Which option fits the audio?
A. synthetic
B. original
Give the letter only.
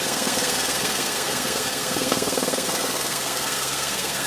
A